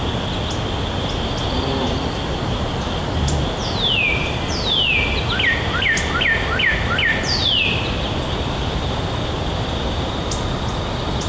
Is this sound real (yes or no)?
yes